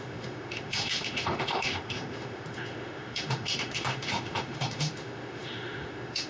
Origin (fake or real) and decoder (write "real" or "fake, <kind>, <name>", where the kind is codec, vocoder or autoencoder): fake, autoencoder, DAC-VAE